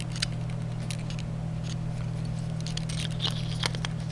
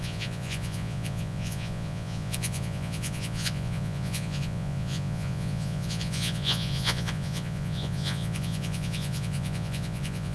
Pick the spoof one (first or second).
second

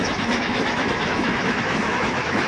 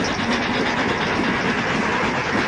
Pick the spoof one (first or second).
first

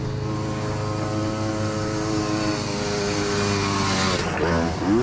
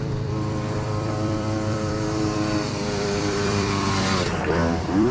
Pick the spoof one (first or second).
second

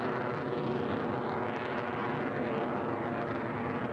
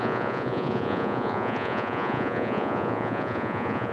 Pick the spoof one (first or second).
second